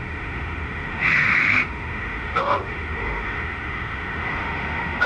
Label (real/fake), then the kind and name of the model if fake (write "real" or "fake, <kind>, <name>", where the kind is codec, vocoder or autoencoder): fake, autoencoder, DAC-VAE